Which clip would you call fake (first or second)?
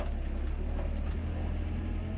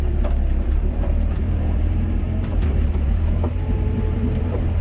second